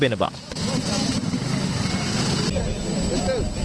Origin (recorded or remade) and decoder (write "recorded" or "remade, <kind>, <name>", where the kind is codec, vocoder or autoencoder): recorded